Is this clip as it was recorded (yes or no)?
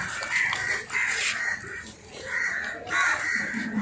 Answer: yes